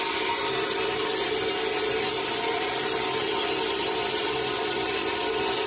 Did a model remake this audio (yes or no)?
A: no